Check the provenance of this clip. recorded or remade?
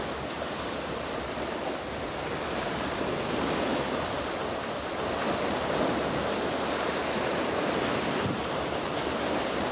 recorded